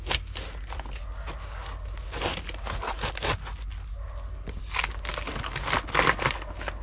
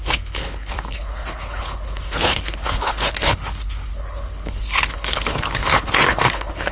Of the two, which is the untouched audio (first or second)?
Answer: first